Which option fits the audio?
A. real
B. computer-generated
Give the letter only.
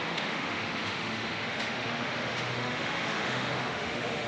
B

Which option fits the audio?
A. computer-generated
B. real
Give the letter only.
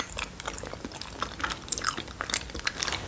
B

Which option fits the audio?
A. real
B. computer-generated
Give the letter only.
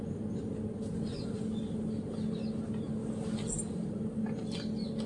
A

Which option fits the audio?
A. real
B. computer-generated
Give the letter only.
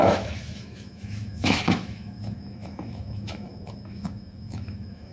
B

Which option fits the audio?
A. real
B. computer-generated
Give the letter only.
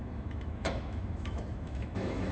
B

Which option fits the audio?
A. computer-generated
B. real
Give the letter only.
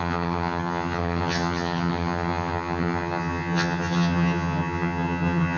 A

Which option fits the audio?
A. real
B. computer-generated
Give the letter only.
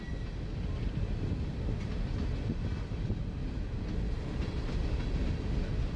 A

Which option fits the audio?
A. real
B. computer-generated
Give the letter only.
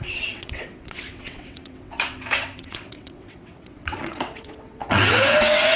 B